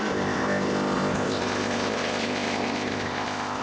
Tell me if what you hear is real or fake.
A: fake